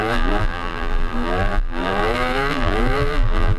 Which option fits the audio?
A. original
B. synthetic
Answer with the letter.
B